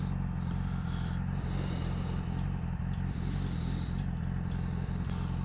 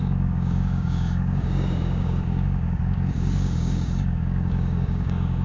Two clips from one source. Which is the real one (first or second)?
first